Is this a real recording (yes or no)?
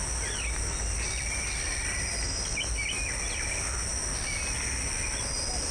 yes